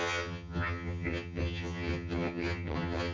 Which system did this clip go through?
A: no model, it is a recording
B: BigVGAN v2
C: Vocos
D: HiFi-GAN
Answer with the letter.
D